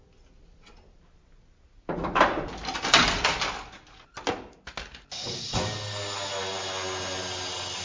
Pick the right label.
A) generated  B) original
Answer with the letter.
B